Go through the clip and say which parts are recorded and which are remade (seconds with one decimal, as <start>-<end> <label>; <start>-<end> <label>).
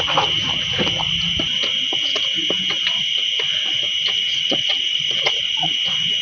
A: 0.0-4.3 recorded; 4.3-5.7 remade; 5.7-6.2 recorded